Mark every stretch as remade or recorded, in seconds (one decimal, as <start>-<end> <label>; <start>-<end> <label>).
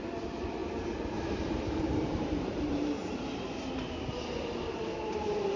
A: 0.0-3.0 remade; 3.0-5.6 recorded